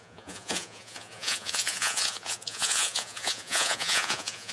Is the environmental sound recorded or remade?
remade